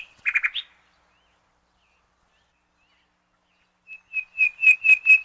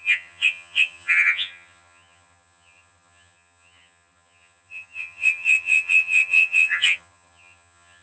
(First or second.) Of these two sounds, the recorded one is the first